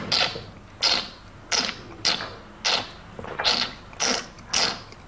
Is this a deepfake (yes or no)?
no